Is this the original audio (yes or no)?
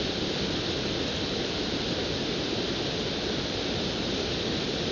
yes